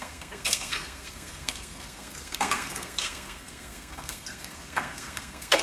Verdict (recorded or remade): remade